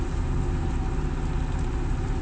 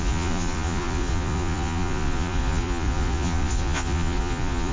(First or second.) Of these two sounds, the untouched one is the first